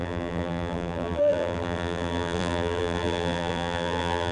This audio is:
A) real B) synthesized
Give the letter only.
B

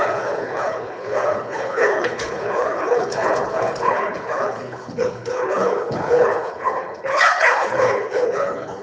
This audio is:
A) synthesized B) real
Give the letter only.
A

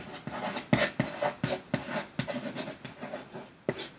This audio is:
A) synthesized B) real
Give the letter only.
B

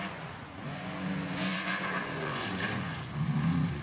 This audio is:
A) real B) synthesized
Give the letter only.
B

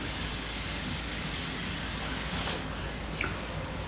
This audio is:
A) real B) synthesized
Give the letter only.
B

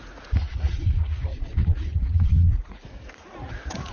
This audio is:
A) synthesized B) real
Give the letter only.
A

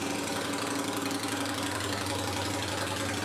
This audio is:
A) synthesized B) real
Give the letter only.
B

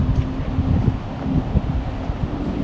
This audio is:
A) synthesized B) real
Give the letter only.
A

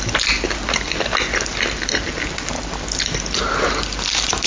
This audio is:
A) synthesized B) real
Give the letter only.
B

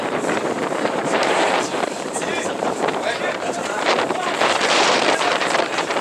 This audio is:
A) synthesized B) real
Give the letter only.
A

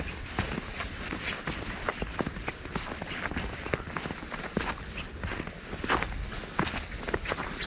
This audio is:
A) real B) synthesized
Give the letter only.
A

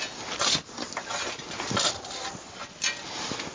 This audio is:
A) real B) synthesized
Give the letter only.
A